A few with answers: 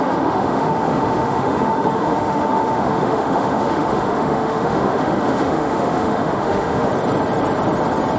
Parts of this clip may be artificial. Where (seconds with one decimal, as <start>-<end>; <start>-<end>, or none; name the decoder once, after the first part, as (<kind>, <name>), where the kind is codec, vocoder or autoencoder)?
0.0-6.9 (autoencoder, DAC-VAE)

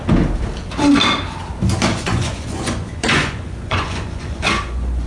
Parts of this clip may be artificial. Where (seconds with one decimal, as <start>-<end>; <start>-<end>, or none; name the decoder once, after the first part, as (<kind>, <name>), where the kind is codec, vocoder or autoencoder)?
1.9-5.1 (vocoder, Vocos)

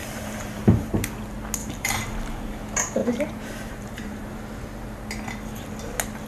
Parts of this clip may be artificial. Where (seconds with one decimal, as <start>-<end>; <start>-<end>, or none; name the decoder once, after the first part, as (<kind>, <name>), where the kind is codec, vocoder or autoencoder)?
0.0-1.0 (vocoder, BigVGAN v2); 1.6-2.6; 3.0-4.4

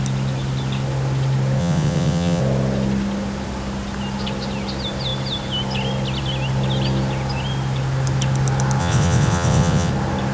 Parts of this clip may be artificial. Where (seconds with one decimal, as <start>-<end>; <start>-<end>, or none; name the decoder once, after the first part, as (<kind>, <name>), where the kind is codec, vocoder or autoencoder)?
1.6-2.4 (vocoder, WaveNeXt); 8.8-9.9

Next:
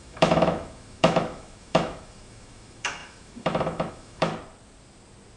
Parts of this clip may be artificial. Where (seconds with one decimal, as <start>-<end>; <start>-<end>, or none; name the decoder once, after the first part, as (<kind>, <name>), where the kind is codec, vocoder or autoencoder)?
0.0-4.3 (autoencoder, DAC-VAE)

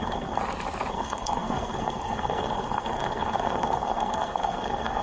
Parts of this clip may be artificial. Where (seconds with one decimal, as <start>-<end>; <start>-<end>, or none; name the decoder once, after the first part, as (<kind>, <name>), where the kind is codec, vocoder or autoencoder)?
0.0-0.4 (codec, SNAC); 0.9-5.0

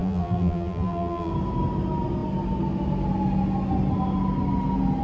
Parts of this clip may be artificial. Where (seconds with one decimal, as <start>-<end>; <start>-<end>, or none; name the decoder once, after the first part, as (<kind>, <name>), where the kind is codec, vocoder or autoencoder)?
0.0-1.3 (vocoder, BigVGAN v2)

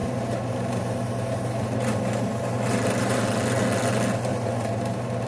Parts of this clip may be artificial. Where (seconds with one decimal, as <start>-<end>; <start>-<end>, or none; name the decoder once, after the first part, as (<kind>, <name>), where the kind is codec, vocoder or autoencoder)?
0.0-3.2 (vocoder, BigVGAN v2); 4.3-5.3